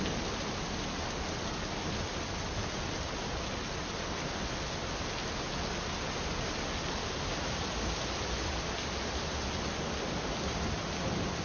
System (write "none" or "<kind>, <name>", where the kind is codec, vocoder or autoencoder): none